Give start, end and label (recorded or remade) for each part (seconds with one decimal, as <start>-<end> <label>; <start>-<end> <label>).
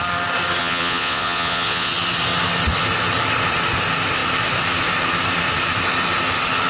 0.0-0.6 recorded; 0.6-1.9 remade; 1.9-6.7 recorded